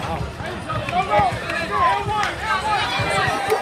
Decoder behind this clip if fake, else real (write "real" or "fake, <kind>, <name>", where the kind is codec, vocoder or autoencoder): real